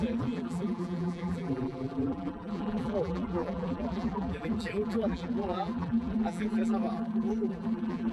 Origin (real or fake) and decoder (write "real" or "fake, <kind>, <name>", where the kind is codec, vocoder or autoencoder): fake, vocoder, BigVGAN v2